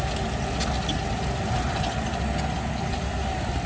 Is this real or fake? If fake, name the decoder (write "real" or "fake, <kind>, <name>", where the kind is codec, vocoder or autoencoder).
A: real